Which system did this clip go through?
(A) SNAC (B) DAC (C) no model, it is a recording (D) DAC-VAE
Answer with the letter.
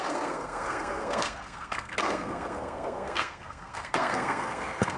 A